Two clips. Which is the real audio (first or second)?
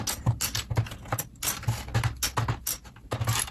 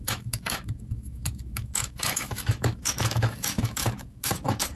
first